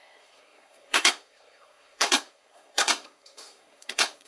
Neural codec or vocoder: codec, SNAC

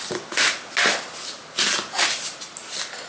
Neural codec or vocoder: none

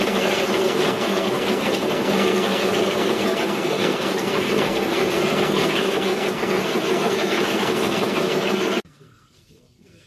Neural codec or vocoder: codec, SNAC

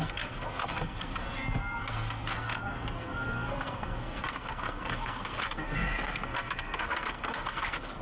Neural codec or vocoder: codec, SNAC